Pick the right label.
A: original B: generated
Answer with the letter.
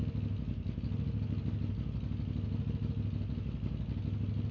A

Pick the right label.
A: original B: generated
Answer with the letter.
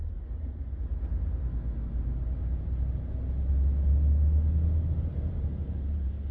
A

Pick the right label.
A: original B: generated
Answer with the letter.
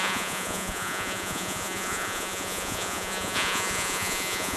B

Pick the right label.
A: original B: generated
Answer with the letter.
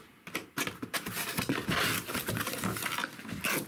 A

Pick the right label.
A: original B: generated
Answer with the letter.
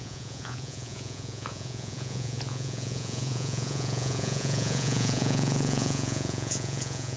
B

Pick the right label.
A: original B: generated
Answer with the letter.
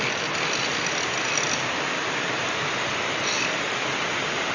A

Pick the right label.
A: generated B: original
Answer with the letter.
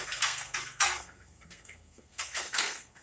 A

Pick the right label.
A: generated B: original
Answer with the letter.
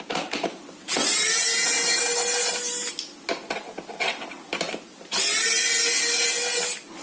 B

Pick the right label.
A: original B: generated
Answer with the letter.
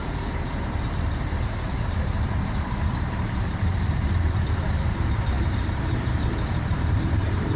B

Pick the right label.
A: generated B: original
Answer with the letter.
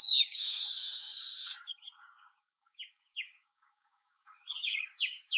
A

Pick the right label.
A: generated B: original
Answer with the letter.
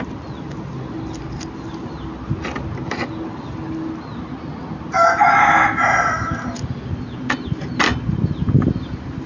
B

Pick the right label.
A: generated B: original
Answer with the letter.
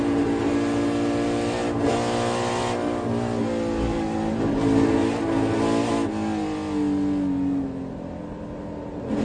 B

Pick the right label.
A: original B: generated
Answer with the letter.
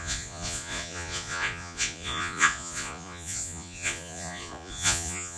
B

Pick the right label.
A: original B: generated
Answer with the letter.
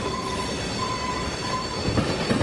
A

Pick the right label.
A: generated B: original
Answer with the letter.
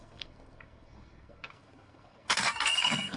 A